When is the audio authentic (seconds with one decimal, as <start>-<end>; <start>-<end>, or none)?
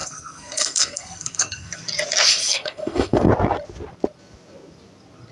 1.8-2.3; 3.3-5.3